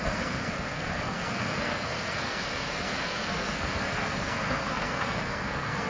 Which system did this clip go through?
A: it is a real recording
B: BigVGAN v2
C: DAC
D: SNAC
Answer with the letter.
D